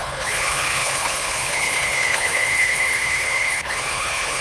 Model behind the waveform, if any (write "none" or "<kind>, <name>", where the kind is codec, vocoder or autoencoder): codec, HILCodec